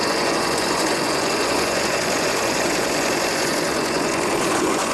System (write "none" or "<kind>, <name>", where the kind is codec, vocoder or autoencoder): vocoder, Vocos